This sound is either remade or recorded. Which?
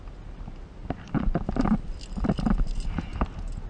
recorded